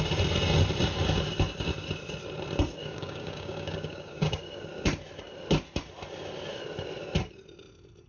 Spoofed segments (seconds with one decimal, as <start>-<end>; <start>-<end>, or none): 2.8-4.6